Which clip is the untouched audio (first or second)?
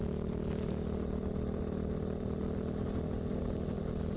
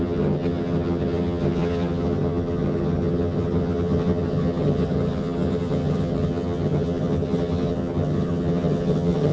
first